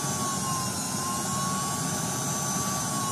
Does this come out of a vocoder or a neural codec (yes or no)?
no